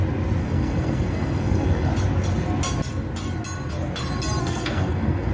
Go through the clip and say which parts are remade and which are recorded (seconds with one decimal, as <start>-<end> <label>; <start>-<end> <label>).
0.0-0.4 recorded; 0.4-1.9 remade; 1.9-4.4 recorded; 4.4-5.3 remade